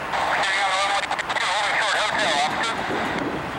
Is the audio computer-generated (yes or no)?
yes